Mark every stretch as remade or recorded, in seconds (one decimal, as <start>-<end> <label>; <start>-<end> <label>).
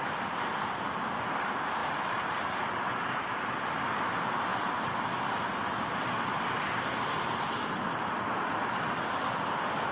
0.0-1.8 recorded; 1.8-2.7 remade; 2.7-9.9 recorded